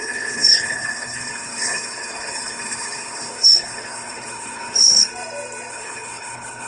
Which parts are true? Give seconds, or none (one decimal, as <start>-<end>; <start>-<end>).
5.1-5.7